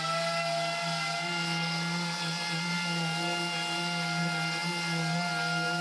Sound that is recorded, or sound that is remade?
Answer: recorded